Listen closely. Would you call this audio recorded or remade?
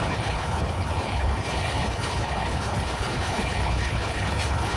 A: remade